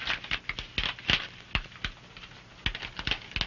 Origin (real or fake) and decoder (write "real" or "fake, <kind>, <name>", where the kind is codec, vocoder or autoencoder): real